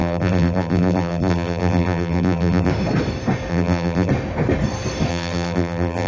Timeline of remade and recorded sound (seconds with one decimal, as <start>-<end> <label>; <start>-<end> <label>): 0.0-2.7 remade; 2.7-3.5 recorded; 3.5-4.1 remade; 4.1-5.1 recorded; 5.1-6.1 remade